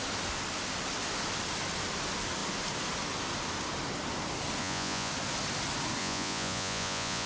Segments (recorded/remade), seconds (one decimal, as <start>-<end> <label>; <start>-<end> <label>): 0.0-4.6 recorded; 4.6-5.1 remade; 5.1-6.0 recorded; 6.0-7.3 remade